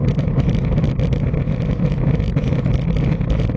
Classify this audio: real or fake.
real